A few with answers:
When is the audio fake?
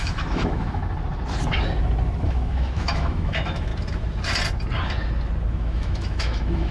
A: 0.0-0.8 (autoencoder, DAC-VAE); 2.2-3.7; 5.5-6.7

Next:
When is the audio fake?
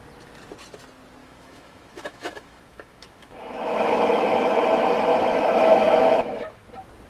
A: 1.2-4.6 (autoencoder, DAC-VAE); 5.1-6.6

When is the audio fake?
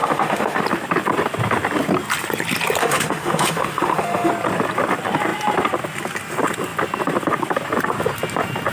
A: 0.0-0.6 (autoencoder, DAC-VAE); 2.8-4.3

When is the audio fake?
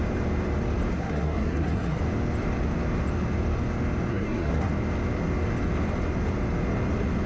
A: 0.9-2.0 (codec, SNAC); 4.1-4.7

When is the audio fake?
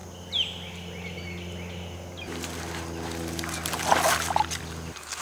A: none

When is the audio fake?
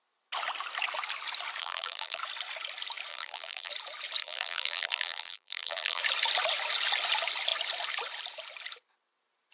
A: 1.6-2.2 (vocoder, BigVGAN v2); 3.1-3.7; 4.2-6.0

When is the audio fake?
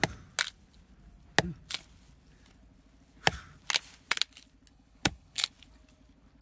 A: 4.7-5.5 (codec, HILCodec)